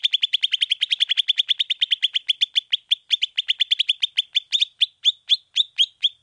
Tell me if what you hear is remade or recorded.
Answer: recorded